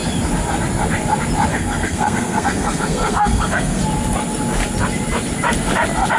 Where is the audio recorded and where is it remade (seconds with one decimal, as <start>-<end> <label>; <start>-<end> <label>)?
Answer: 0.0-1.5 recorded; 1.5-3.8 remade; 3.8-6.2 recorded